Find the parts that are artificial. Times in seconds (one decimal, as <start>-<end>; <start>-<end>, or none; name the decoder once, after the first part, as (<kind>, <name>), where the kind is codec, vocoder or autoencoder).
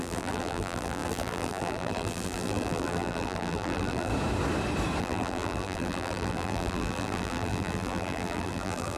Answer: 0.0-4.1 (vocoder, BigVGAN v2); 5.0-9.0